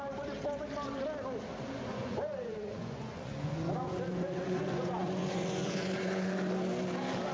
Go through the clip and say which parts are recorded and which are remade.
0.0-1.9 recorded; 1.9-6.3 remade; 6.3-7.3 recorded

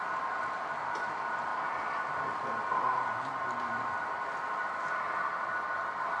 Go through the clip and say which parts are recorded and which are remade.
0.0-6.2 recorded

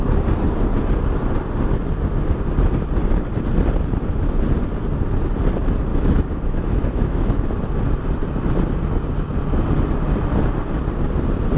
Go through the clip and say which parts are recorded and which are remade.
0.0-5.9 recorded; 5.9-7.5 remade; 7.5-11.6 recorded

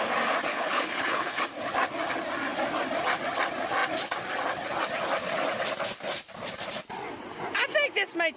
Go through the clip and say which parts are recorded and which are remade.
0.0-0.5 recorded; 0.5-1.4 remade; 1.4-8.4 recorded

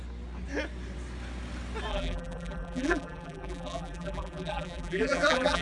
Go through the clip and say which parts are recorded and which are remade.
0.0-1.9 recorded; 1.9-5.6 remade

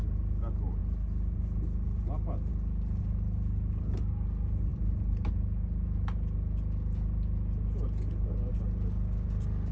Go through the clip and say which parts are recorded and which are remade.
0.0-9.7 recorded